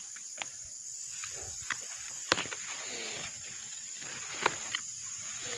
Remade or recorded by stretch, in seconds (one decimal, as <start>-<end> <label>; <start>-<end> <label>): 0.0-2.2 remade; 2.2-4.8 recorded; 4.8-5.6 remade